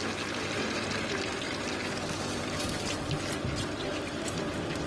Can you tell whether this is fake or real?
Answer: real